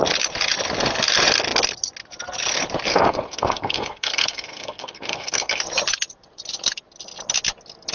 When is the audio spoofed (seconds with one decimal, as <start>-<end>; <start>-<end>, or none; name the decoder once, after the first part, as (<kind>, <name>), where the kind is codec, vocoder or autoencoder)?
2.9-5.6 (codec, SNAC)